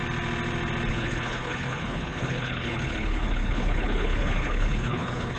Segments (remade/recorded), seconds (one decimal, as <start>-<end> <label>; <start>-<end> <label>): 0.0-0.9 recorded; 0.9-5.4 remade